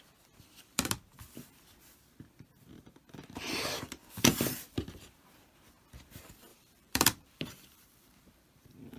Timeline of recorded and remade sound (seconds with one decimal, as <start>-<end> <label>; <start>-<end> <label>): 0.0-4.3 recorded; 4.3-5.4 remade; 5.4-6.5 recorded; 6.5-9.0 remade